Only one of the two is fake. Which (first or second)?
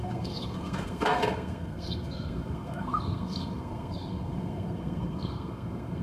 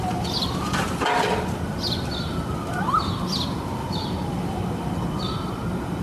first